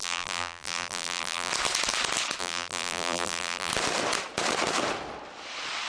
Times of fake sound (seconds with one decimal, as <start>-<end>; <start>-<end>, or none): 0.0-1.5; 2.4-3.7

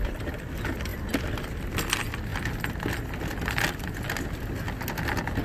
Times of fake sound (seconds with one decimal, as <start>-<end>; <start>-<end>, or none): none

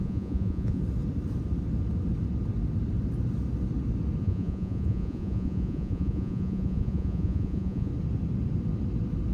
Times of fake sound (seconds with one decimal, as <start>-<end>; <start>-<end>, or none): 0.0-0.8; 4.2-7.9

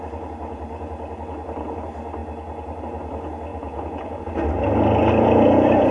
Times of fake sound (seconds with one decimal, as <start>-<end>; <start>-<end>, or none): 3.5-4.2; 5.0-5.9

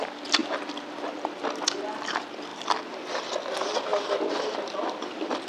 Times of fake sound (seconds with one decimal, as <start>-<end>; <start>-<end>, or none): 0.4-1.9; 2.5-3.3

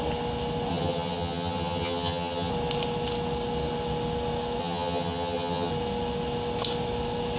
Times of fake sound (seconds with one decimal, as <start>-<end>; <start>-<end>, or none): 0.7-2.5; 4.6-5.7

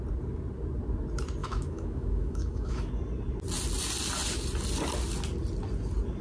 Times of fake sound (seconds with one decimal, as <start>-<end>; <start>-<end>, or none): 1.4-2.9

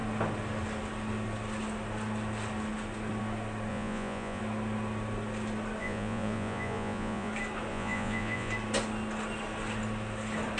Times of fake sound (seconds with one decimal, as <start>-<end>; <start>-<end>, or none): 3.7-4.4; 5.8-7.3; 7.7-8.5